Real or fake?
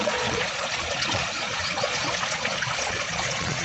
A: fake